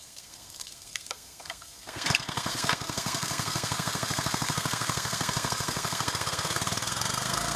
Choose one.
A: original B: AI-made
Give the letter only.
B